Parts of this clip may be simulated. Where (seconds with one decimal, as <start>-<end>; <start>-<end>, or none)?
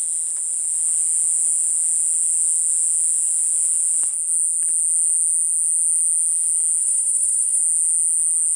6.8-7.6